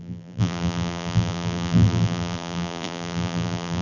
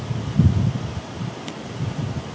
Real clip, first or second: second